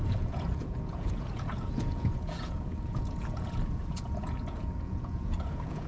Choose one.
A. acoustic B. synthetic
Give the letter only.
B